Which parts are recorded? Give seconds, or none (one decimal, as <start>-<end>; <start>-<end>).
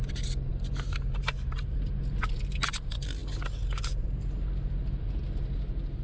0.0-6.0